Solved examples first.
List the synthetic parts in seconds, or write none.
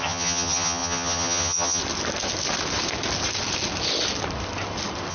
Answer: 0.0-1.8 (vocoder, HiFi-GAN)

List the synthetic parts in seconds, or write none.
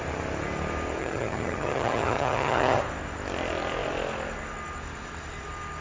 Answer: 1.0-2.8 (vocoder, HiFi-GAN)